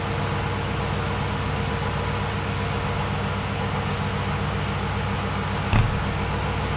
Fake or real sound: real